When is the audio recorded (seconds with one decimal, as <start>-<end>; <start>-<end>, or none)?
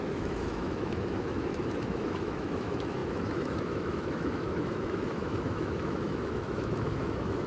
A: none